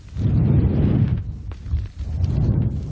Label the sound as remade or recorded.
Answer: recorded